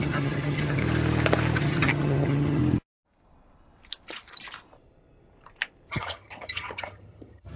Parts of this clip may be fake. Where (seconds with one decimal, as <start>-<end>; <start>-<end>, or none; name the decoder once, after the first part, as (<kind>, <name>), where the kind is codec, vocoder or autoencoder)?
0.0-0.8 (vocoder, HiFi-GAN); 1.6-2.6; 5.9-7.6